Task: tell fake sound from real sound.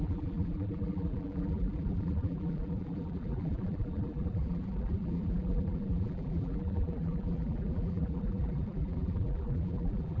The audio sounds fake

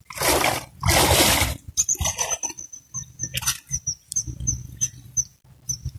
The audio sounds fake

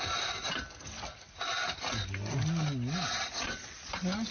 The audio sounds real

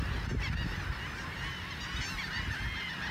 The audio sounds real